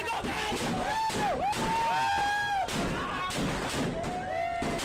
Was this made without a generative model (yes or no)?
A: yes